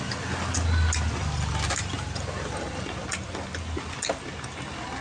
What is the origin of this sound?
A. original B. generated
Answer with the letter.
A